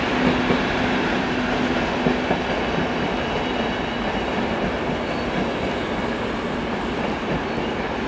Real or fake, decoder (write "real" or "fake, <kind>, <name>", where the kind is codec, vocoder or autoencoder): real